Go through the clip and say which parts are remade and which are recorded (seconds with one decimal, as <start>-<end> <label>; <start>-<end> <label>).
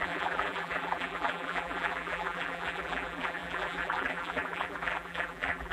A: 0.0-5.7 remade